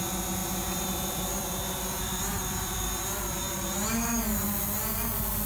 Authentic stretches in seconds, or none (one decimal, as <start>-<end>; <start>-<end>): 0.0-0.4; 3.7-5.5